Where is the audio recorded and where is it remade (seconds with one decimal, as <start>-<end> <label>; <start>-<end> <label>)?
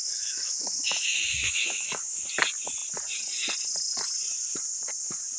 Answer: 0.0-2.3 remade; 2.3-5.4 recorded